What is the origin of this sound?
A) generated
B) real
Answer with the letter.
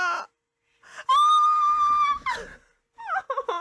B